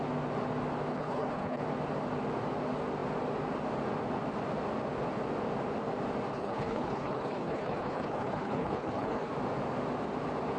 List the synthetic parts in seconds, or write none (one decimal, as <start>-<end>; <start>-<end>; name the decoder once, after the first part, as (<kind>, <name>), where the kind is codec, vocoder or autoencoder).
0.9-1.6 (codec, HILCodec); 6.3-9.3